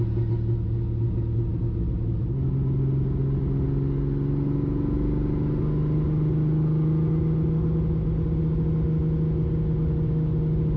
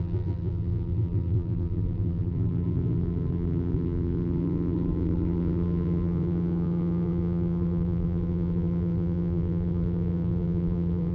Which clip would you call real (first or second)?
first